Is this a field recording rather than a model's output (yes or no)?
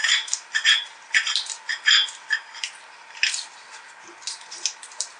yes